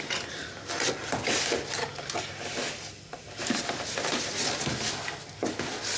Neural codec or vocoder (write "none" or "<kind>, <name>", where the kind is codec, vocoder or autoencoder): none